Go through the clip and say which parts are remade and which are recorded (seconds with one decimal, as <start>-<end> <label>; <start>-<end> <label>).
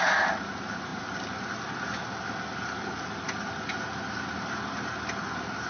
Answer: 0.0-5.7 recorded